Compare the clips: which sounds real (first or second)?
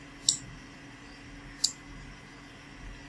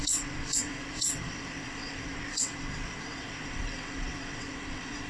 first